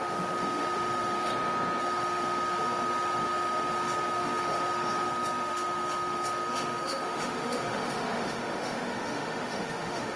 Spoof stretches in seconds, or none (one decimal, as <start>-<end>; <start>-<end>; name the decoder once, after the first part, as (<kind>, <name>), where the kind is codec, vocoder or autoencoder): 0.0-1.3 (autoencoder, DAC-VAE); 1.8-10.2